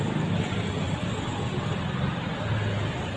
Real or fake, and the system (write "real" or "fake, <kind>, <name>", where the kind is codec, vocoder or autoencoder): real